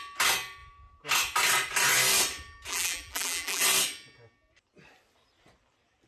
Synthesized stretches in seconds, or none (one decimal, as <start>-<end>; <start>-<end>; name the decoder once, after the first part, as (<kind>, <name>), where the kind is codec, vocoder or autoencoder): 2.7-3.6 (vocoder, BigVGAN v2)